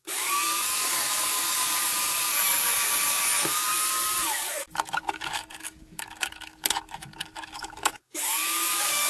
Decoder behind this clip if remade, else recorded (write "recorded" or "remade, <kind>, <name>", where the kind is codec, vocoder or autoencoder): remade, codec, DAC